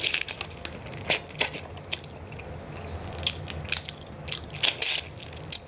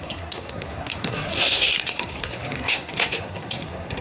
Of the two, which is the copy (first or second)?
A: second